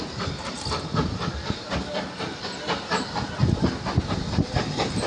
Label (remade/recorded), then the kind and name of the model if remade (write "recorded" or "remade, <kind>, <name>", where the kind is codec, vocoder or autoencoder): recorded